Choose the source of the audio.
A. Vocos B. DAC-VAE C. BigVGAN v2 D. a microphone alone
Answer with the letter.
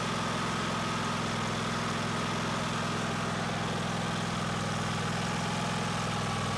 D